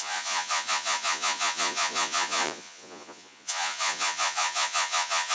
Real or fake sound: fake